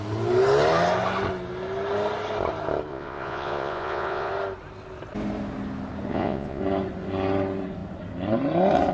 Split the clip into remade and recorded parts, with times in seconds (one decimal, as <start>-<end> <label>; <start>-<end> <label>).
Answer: 0.0-2.9 recorded; 2.9-4.3 remade; 4.3-6.1 recorded; 6.1-6.6 remade; 6.6-8.9 recorded